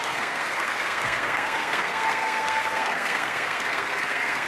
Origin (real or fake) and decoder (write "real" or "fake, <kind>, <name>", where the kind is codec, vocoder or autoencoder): fake, codec, SNAC